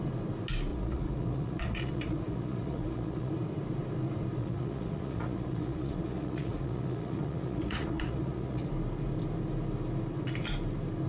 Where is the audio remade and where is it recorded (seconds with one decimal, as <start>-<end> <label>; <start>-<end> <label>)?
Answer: 0.0-0.7 recorded; 0.7-3.3 remade; 3.3-4.4 recorded; 4.4-8.7 remade; 8.7-11.1 recorded